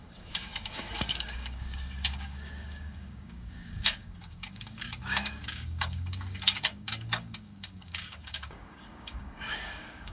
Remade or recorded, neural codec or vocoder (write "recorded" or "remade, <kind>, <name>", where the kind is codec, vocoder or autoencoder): remade, codec, DAC